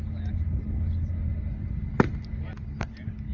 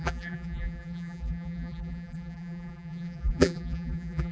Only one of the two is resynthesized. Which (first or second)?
second